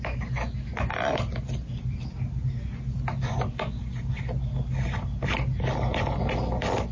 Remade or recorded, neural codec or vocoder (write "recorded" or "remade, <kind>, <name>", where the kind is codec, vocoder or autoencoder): recorded